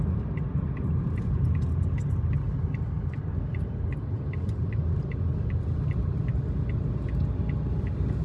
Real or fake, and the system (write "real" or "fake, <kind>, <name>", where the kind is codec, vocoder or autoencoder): real